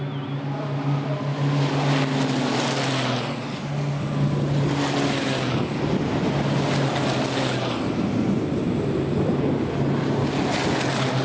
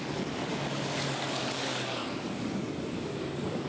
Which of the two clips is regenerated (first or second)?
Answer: second